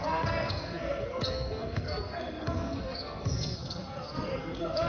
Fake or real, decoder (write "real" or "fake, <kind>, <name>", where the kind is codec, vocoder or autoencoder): fake, codec, SNAC